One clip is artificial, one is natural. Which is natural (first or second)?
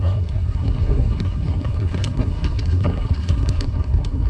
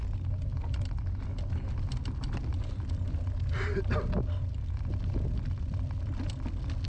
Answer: second